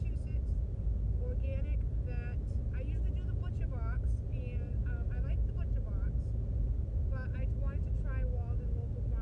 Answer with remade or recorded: recorded